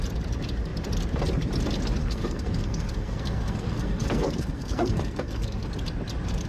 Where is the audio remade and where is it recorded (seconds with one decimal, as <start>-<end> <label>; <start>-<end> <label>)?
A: 0.0-2.0 recorded; 2.0-5.7 remade; 5.7-6.5 recorded